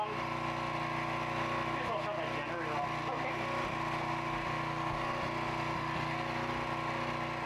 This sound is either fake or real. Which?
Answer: real